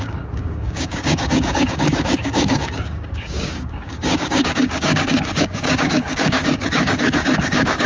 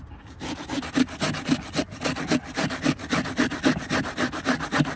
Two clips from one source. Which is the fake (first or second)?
first